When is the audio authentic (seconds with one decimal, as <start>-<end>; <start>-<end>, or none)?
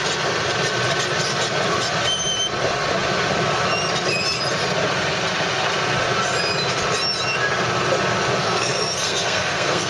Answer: 0.0-8.4